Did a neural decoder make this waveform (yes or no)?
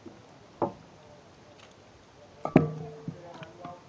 no